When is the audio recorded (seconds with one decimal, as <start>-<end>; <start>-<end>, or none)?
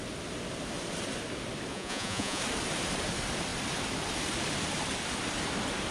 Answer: 0.0-1.7; 2.4-5.9